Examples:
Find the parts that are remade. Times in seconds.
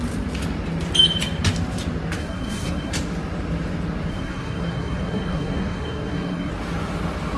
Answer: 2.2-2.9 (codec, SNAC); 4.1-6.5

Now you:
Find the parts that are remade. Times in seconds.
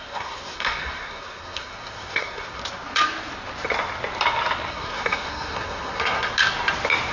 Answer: 0.0-2.6 (codec, SNAC); 4.7-6.3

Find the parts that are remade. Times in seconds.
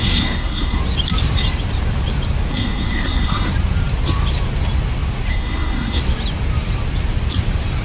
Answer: 0.0-0.8 (codec, SNAC); 2.5-3.5; 5.3-6.0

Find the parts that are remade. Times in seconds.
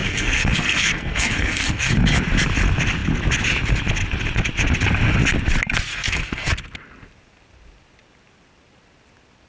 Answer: 0.0-1.9 (codec, SNAC); 5.9-6.5